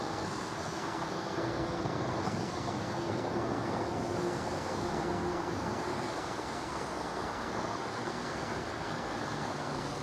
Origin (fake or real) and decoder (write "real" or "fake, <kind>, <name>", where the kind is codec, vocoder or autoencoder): fake, codec, SNAC